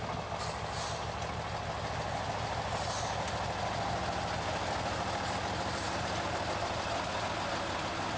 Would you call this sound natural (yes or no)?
yes